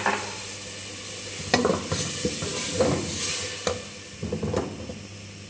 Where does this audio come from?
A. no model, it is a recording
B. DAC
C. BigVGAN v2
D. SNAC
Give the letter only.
A